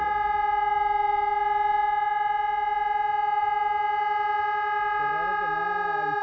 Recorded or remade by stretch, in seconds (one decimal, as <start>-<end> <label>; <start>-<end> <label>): 0.0-6.2 recorded